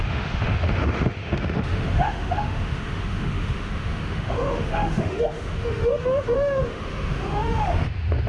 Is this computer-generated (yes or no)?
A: yes